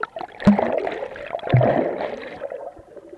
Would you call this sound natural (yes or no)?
yes